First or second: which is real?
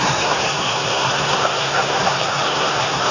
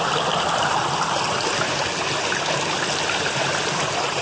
second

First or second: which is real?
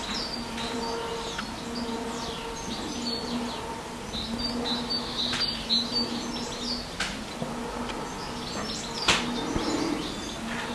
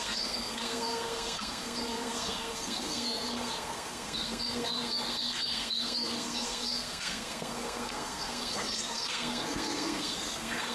first